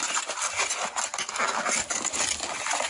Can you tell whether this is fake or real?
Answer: real